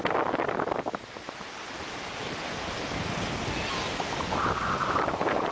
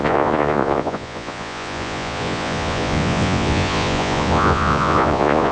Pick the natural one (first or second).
first